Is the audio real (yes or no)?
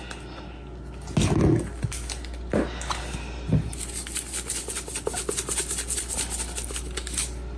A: yes